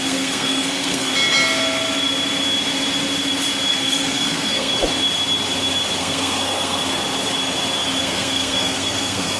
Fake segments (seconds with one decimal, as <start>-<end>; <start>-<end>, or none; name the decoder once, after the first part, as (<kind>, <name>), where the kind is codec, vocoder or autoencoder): 0.0-1.1 (codec, SNAC); 3.7-4.7; 6.0-6.8; 8.0-9.4